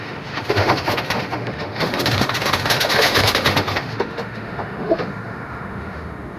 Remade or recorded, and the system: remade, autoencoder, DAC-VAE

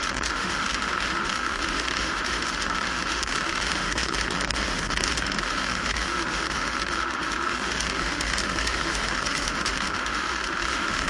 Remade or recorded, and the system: remade, autoencoder, DAC-VAE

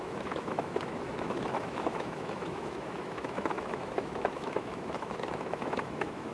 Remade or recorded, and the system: remade, autoencoder, DAC-VAE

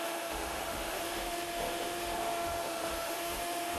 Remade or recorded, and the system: remade, autoencoder, DAC-VAE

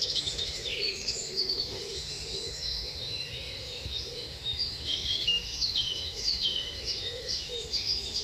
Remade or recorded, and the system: remade, autoencoder, DAC-VAE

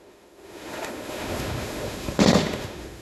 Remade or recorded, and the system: remade, autoencoder, DAC-VAE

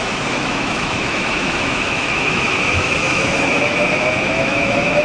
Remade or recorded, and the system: remade, autoencoder, DAC-VAE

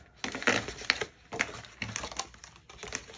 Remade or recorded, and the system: recorded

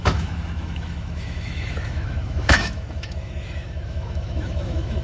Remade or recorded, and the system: remade, autoencoder, DAC-VAE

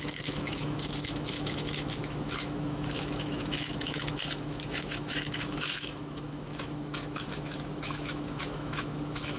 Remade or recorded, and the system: remade, autoencoder, DAC-VAE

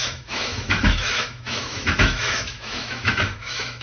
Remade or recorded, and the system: remade, autoencoder, DAC-VAE